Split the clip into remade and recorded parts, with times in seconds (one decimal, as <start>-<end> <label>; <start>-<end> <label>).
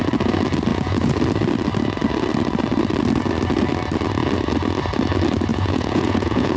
0.0-0.7 recorded; 0.7-1.2 remade; 1.2-5.5 recorded; 5.5-6.6 remade